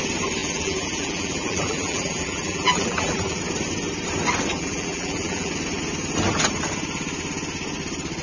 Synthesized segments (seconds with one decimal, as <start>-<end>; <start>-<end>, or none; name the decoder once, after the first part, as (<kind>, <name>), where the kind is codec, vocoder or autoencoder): 0.4-3.4 (vocoder, BigVGAN v2); 4.5-5.5